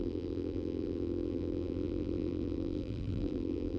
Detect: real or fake fake